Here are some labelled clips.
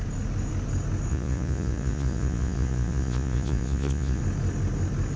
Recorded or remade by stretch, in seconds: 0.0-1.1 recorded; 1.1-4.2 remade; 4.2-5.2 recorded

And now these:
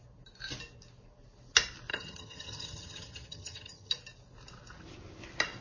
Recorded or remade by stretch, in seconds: 0.0-1.9 recorded; 1.9-3.9 remade; 3.9-5.6 recorded

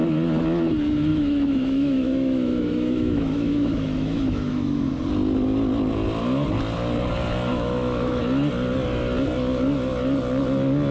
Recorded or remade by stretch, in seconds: 0.0-1.1 recorded; 1.1-4.9 remade; 4.9-7.5 recorded; 7.5-8.2 remade; 8.2-10.9 recorded

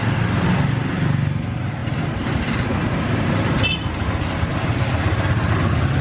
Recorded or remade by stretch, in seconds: 0.0-1.8 recorded; 1.8-3.3 remade; 3.3-4.5 recorded; 4.5-5.3 remade; 5.3-6.0 recorded

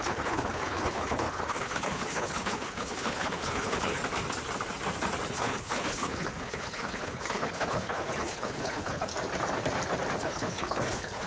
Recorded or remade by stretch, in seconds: 0.0-4.0 remade; 4.0-5.3 recorded; 5.3-9.1 remade; 9.1-10.2 recorded; 10.2-11.3 remade

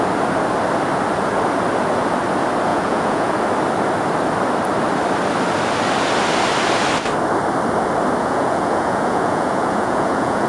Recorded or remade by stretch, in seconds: 0.0-2.7 recorded; 2.7-3.3 remade; 3.3-8.2 recorded; 8.2-10.5 remade

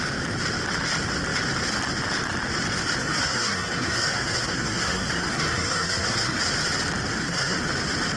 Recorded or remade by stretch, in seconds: 0.0-3.0 recorded; 3.0-6.4 remade; 6.4-7.1 recorded; 7.1-7.6 remade; 7.6-8.2 recorded

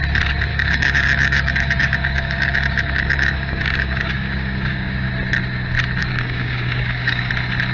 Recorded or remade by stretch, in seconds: 0.0-0.5 recorded; 0.5-5.1 remade; 5.1-6.0 recorded; 6.0-7.3 remade; 7.3-7.7 recorded